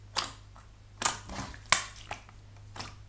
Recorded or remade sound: recorded